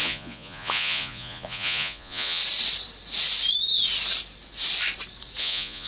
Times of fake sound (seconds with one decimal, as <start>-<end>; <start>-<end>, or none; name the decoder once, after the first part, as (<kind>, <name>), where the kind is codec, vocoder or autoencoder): 0.0-2.4 (vocoder, Vocos); 5.4-5.9